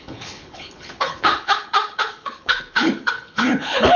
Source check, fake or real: fake